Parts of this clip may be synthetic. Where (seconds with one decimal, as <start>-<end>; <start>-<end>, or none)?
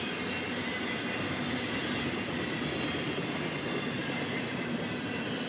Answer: none